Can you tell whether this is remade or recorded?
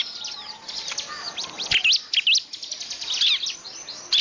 recorded